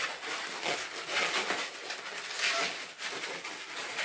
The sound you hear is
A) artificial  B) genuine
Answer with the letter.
B